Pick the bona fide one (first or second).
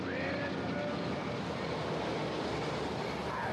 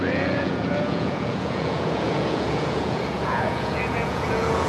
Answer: first